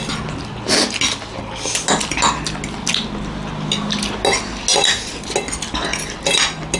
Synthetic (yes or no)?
no